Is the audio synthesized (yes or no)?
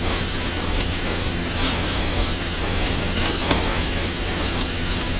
yes